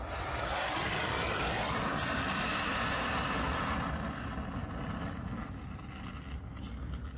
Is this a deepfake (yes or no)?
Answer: no